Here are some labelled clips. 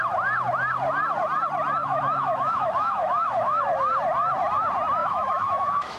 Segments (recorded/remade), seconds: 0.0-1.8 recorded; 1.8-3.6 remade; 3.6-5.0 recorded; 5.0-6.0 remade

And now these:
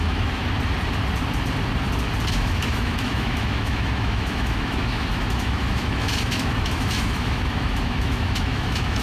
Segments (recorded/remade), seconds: 0.0-0.4 remade; 0.4-2.3 recorded; 2.3-9.0 remade

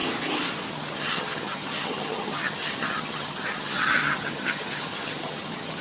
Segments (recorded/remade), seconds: 0.0-0.7 recorded; 0.7-5.8 remade

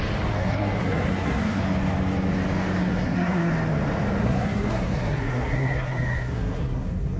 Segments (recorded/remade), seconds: 0.0-0.4 recorded; 0.4-1.6 remade; 1.6-2.8 recorded; 2.8-3.5 remade; 3.5-4.2 recorded; 4.2-7.2 remade

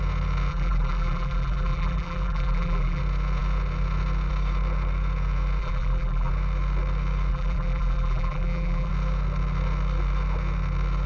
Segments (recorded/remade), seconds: 0.0-0.5 recorded; 0.5-3.0 remade; 3.0-5.6 recorded; 5.6-6.3 remade; 6.3-7.3 recorded; 7.3-8.9 remade; 8.9-11.1 recorded

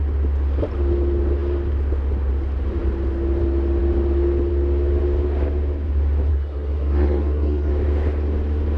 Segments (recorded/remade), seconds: 0.0-6.3 recorded; 6.3-7.7 remade; 7.7-8.8 recorded